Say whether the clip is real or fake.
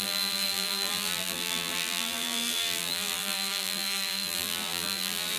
fake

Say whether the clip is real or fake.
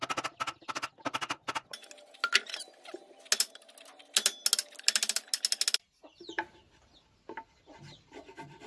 real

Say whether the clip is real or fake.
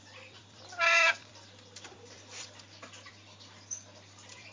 fake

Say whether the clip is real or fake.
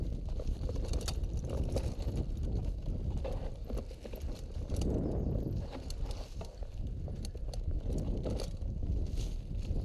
real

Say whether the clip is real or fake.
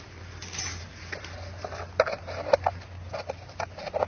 fake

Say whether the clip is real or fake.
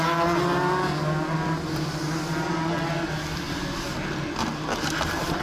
real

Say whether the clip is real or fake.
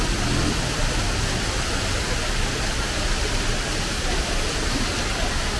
real